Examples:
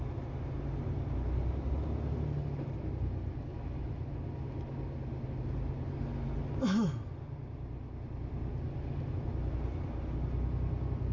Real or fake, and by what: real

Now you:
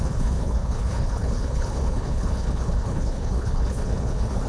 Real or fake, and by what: fake, codec, HILCodec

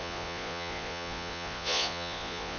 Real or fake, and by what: fake, vocoder, Vocos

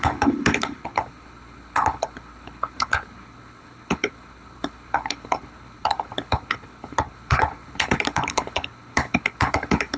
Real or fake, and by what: fake, codec, HILCodec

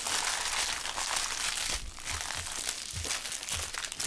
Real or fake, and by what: real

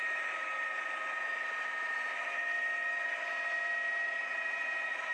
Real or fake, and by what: real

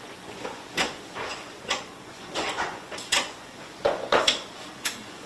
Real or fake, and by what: fake, vocoder, Vocos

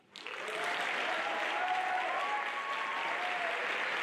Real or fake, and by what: real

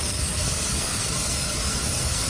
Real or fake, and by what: fake, codec, SNAC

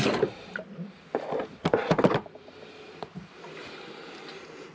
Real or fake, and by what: real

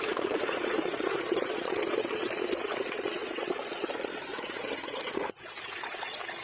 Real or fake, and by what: fake, vocoder, Vocos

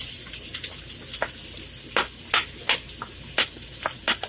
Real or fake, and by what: real